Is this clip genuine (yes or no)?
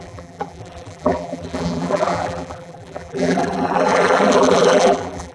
no